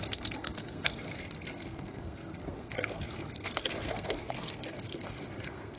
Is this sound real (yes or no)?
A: no